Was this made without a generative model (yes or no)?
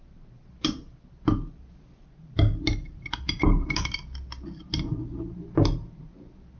yes